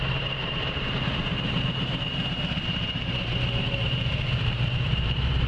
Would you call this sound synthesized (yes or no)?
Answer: yes